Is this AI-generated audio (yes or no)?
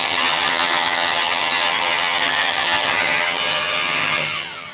yes